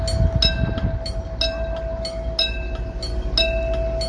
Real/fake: real